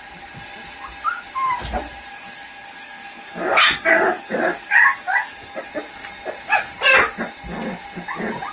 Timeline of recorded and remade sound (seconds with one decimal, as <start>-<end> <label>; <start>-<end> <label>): 0.0-2.1 recorded; 2.1-5.7 remade; 5.7-8.5 recorded